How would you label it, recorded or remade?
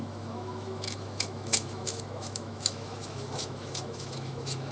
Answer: remade